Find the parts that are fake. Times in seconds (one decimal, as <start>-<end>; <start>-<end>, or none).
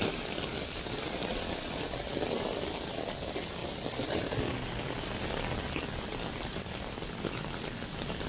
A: 1.2-1.8